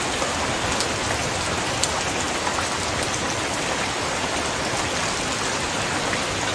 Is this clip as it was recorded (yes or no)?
yes